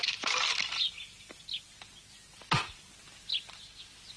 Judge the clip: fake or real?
real